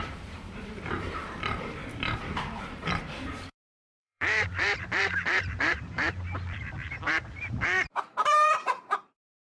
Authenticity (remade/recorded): remade